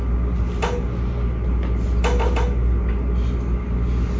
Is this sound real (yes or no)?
yes